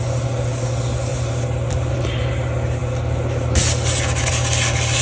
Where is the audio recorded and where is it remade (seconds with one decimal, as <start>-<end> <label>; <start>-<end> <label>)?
0.0-1.1 recorded; 1.1-2.3 remade; 2.3-5.0 recorded